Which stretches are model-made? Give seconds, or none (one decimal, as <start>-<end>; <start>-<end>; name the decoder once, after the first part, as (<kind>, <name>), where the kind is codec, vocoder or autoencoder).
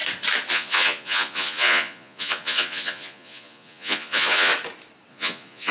0.5-4.5 (vocoder, Vocos); 5.1-5.7